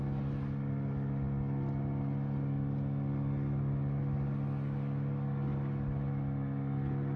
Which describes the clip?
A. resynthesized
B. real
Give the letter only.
B